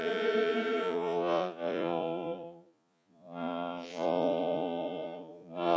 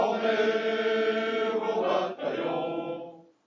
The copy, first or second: first